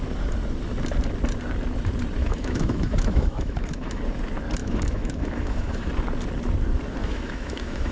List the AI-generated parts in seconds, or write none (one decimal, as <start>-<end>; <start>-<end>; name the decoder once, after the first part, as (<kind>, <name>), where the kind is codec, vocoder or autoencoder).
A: 2.2-4.0 (autoencoder, DAC-VAE); 4.6-5.9; 7.0-7.9